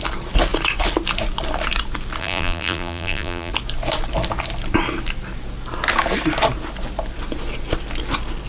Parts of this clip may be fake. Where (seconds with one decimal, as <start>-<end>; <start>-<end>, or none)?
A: 2.2-3.5